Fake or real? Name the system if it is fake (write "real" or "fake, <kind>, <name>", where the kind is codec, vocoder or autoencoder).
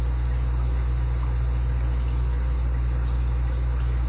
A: real